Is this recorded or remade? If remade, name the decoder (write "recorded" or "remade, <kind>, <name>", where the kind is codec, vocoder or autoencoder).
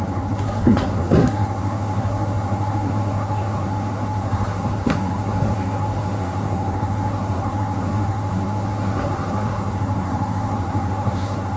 remade, codec, SNAC